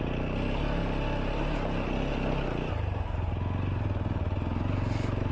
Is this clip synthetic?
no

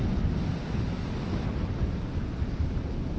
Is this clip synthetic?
no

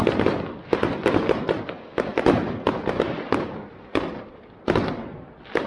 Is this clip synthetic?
no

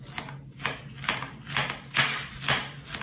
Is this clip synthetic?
no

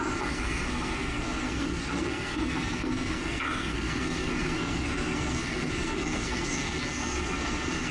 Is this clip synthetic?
yes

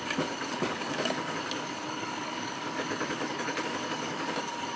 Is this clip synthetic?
yes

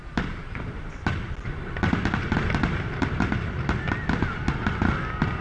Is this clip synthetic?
no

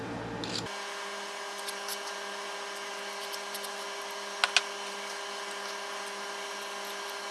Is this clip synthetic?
no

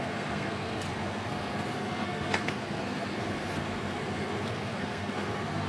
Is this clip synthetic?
yes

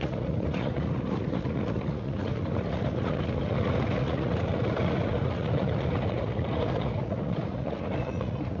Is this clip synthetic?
yes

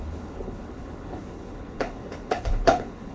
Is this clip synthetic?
yes